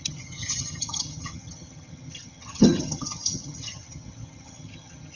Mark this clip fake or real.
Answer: fake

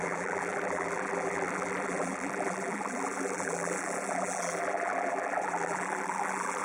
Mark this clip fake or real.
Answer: fake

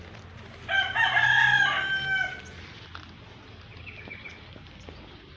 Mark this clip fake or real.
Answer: real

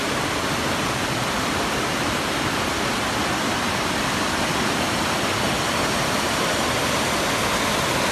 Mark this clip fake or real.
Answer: real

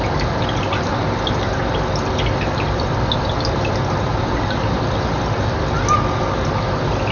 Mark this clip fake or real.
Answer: real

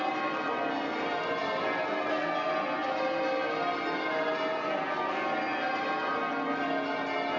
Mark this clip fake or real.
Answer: real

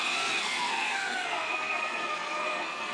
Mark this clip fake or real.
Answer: fake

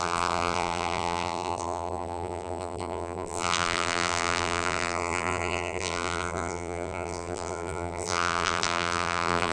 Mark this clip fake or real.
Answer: fake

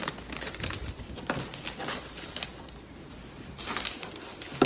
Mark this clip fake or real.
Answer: real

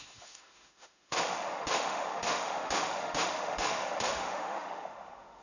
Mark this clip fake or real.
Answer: fake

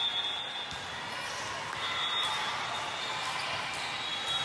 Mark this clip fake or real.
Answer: real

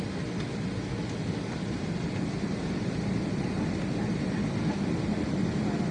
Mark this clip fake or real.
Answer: real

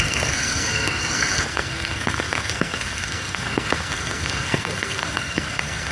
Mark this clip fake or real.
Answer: fake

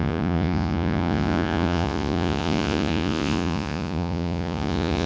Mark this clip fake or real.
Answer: fake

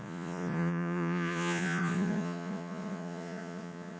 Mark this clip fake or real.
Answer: fake